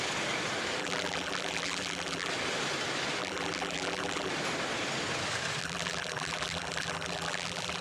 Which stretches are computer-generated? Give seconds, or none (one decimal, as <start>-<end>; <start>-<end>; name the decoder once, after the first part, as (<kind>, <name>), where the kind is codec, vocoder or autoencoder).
0.8-2.3 (vocoder, BigVGAN v2); 3.2-4.3; 5.6-7.8